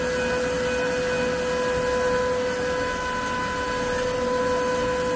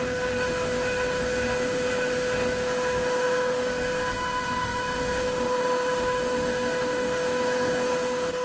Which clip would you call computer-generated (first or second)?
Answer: second